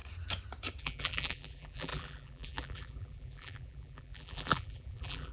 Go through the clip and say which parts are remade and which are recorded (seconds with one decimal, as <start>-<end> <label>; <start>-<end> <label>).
0.0-0.8 recorded; 0.8-5.3 remade